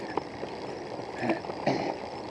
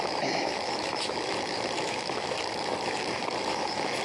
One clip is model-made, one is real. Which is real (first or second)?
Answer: first